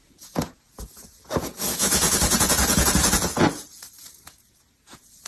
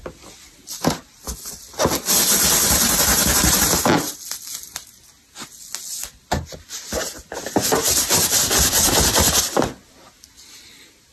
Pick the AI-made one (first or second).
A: first